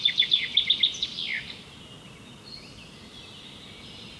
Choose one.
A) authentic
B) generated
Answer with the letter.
A